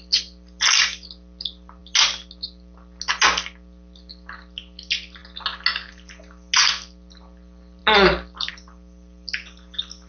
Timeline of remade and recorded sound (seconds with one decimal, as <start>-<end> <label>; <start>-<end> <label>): 0.0-10.1 recorded